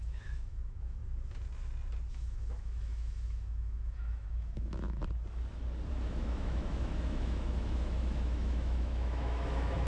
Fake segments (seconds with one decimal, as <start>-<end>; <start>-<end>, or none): 0.0-1.0; 2.1-5.0; 5.9-9.9